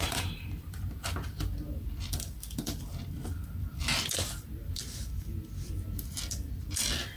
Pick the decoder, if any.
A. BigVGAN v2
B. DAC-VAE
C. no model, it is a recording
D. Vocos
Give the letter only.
A